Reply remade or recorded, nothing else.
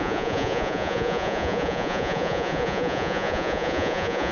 remade